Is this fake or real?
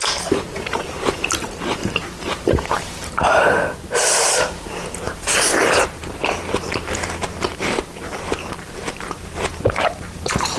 fake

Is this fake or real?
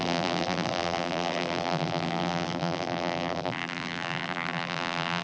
fake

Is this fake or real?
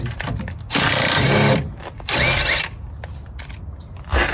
real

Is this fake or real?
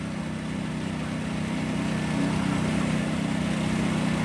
real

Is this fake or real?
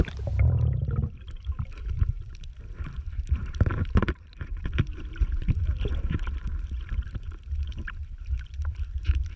fake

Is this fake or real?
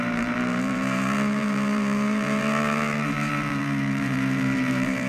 fake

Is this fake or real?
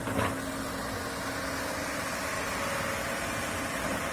real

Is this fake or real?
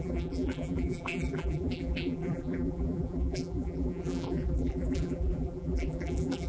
fake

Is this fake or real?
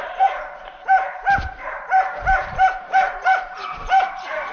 fake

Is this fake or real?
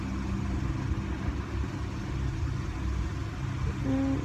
real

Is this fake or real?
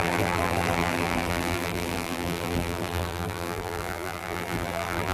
fake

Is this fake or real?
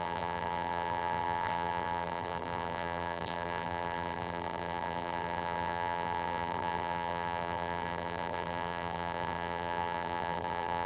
fake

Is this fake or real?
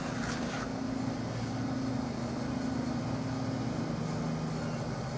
real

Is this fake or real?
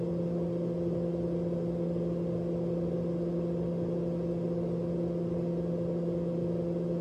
real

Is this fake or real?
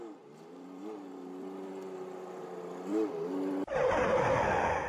fake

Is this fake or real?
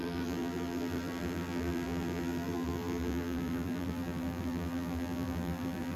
fake